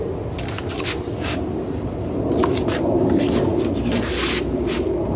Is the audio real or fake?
real